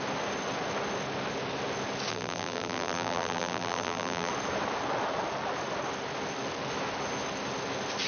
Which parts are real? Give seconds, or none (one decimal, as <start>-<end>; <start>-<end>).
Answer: 0.0-2.1; 4.3-8.1